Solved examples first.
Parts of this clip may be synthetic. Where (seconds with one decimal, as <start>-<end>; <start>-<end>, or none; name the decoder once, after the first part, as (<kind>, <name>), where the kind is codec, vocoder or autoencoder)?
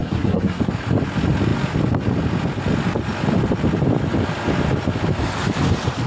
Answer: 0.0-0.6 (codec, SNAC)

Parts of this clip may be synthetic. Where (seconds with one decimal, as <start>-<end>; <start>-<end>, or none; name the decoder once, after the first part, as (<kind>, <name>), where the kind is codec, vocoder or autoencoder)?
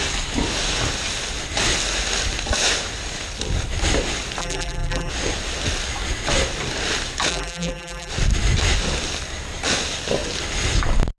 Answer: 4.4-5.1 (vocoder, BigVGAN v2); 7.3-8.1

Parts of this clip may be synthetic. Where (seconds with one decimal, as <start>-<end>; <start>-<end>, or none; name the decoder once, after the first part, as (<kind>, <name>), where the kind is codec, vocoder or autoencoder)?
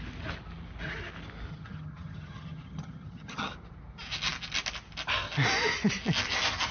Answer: 1.5-3.5 (vocoder, HiFi-GAN)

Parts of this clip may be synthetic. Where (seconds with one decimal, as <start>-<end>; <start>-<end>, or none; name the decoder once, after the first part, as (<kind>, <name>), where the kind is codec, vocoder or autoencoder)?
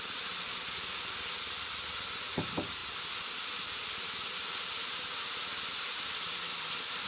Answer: none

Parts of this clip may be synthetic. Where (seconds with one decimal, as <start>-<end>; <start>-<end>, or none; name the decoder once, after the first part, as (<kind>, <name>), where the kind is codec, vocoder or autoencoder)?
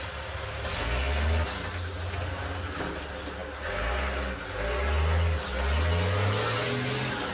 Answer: none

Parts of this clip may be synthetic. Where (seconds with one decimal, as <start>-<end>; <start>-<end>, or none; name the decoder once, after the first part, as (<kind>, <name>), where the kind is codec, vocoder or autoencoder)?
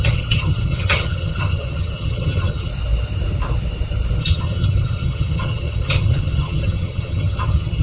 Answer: 0.0-2.7 (vocoder, HiFi-GAN); 4.2-7.8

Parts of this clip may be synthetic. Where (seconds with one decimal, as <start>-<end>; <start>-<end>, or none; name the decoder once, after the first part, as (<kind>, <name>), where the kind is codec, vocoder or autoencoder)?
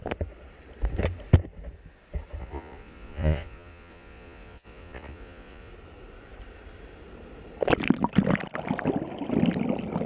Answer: 2.4-5.7 (vocoder, Vocos)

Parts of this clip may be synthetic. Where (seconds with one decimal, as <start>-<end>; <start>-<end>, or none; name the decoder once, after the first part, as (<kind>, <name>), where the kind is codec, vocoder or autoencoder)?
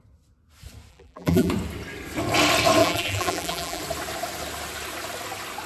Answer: 0.9-1.5 (vocoder, BigVGAN v2); 2.8-3.8